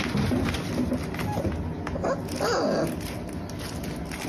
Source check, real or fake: real